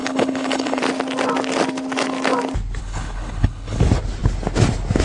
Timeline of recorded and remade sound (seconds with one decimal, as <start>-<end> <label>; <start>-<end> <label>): 0.0-0.8 remade; 0.8-2.8 recorded; 2.8-3.8 remade; 3.8-5.0 recorded